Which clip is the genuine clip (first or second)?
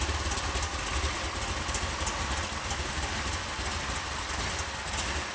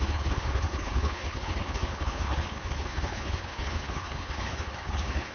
first